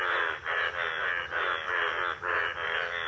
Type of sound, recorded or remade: recorded